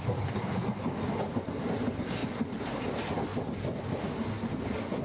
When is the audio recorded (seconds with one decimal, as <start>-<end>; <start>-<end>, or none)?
0.0-5.0